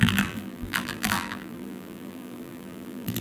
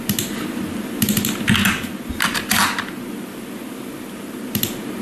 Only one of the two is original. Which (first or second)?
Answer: second